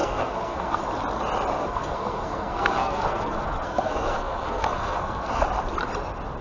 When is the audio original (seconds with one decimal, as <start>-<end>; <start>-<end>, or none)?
0.8-1.6; 5.4-6.4